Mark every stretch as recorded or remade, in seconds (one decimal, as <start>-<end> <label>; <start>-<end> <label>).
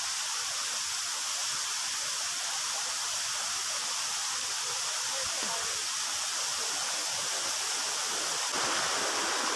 0.0-9.6 recorded